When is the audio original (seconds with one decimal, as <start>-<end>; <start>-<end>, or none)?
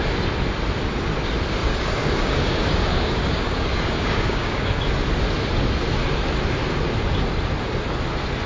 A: 0.0-1.6; 4.8-8.5